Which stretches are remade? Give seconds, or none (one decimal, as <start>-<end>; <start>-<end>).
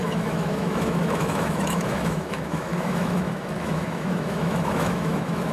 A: 0.0-5.5